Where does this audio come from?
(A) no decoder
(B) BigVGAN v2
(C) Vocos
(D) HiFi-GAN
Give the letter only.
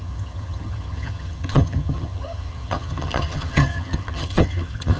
D